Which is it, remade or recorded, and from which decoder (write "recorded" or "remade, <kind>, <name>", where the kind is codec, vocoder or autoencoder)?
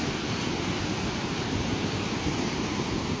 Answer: recorded